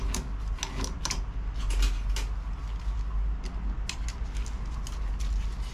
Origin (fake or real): real